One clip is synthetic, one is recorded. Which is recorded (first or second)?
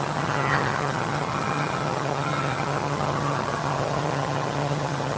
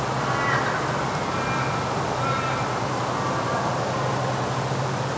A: second